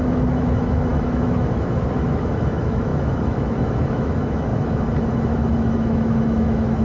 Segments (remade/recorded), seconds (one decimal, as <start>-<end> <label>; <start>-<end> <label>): 0.0-6.8 remade